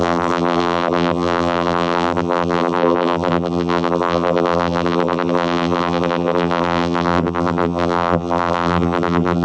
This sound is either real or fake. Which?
fake